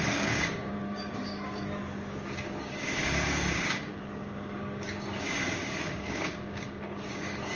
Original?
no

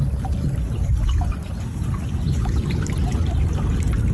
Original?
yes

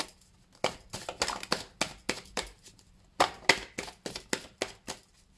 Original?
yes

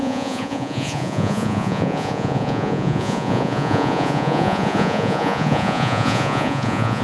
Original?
no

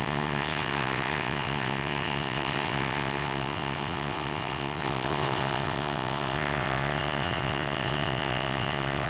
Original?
no